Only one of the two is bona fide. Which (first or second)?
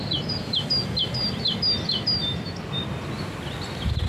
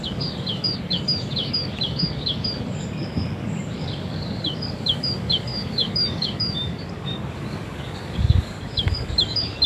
first